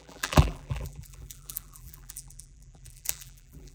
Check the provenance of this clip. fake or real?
fake